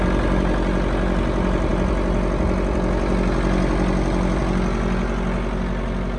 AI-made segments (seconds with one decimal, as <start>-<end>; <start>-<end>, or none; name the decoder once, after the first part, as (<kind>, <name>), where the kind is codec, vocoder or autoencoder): none